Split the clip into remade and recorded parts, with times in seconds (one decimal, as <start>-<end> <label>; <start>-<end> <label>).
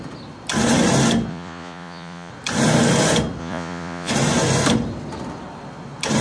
0.0-1.3 recorded; 1.3-2.3 remade; 2.3-3.4 recorded; 3.4-4.1 remade; 4.1-6.2 recorded